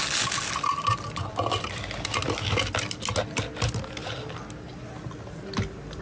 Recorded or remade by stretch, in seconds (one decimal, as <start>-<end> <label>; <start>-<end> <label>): 0.0-6.0 recorded